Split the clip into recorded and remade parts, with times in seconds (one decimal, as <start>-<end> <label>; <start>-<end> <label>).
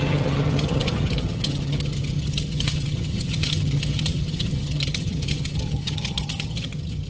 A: 0.0-7.1 remade